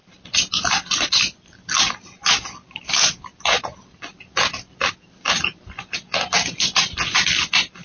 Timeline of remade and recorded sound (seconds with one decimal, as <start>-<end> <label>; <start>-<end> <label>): 0.0-7.8 recorded

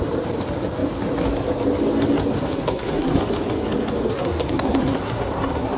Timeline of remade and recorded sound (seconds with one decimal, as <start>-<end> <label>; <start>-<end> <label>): 0.0-2.4 recorded; 2.4-3.2 remade; 3.2-4.0 recorded; 4.0-5.8 remade